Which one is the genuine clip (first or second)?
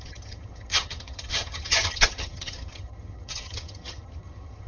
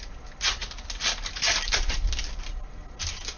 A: second